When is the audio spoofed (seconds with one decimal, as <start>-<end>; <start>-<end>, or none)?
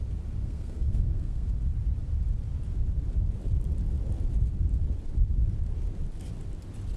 0.4-1.5